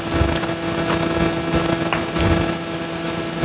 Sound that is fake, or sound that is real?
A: real